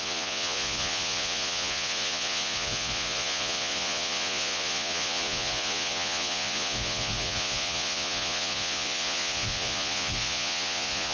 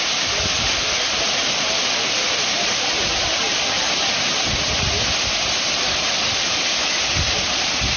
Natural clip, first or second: second